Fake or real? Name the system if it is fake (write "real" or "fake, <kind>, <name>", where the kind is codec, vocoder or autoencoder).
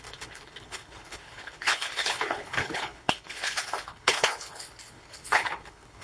fake, codec, HILCodec